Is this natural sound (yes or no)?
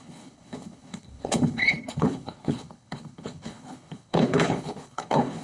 no